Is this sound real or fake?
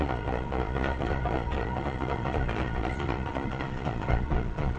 fake